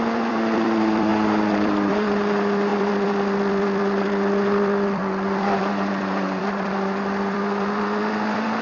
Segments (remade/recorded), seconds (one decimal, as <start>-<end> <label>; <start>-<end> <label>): 0.0-8.6 remade